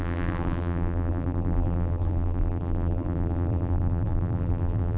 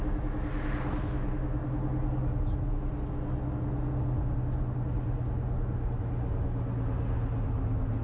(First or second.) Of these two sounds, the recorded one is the second